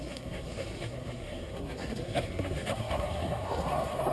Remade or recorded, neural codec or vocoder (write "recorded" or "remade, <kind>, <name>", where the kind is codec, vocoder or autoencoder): remade, codec, SNAC